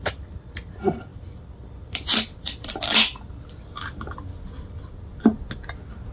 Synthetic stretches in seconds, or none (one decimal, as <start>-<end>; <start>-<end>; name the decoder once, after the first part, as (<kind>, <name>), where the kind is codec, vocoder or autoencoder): 1.1-3.6 (vocoder, BigVGAN v2)